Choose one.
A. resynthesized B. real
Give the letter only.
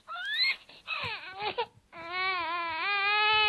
B